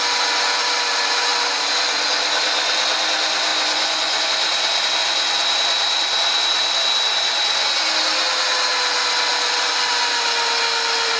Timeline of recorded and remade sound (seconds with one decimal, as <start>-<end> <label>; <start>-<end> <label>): 0.0-3.5 recorded; 3.5-4.3 remade; 4.3-11.2 recorded